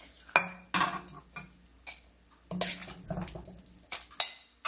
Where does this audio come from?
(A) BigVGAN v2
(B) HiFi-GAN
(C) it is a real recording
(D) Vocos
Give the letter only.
C